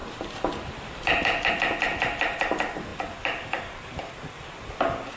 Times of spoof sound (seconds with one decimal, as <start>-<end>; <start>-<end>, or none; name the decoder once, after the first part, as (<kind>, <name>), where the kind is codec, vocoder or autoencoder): none